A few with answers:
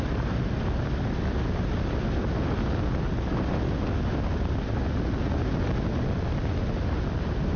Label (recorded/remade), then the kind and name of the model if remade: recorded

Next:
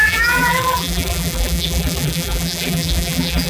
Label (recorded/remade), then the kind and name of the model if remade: remade, vocoder, BigVGAN v2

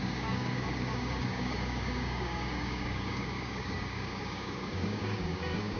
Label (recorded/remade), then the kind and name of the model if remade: remade, codec, DAC